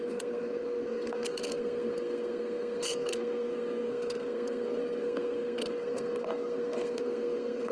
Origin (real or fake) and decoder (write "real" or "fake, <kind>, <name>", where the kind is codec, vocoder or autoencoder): fake, codec, SNAC